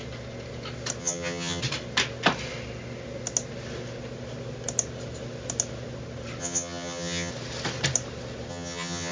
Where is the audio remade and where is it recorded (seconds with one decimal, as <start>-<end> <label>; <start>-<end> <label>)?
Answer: 0.0-1.0 recorded; 1.0-1.6 remade; 1.6-6.4 recorded; 6.4-7.3 remade; 7.3-8.5 recorded; 8.5-9.1 remade

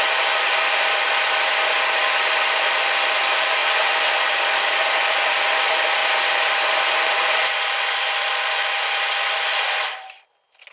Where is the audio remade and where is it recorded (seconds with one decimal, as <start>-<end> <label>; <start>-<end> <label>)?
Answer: 0.0-10.7 recorded

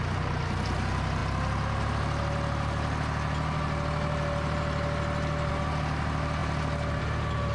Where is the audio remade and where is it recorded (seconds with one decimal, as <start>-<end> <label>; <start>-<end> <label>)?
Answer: 0.0-7.5 recorded

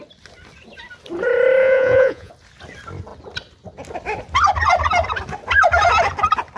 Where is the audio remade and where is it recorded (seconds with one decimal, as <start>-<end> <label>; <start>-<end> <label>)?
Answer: 0.0-1.6 recorded; 1.6-2.3 remade; 2.3-6.6 recorded

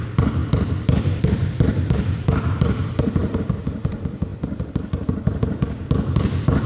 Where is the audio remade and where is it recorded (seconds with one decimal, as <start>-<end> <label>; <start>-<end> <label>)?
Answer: 0.0-0.4 recorded; 0.4-3.4 remade; 3.4-6.7 recorded